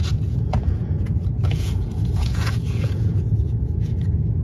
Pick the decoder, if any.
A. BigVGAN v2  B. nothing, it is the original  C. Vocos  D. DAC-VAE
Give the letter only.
C